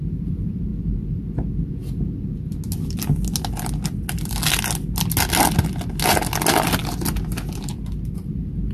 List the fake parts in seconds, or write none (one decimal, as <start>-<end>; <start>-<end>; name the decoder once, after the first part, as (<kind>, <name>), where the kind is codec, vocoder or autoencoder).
none